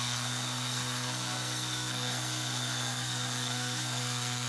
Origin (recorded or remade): remade